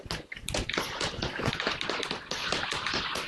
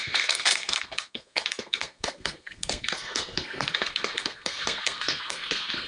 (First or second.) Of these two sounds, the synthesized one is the second